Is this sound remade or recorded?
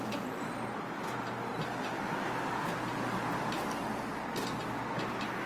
recorded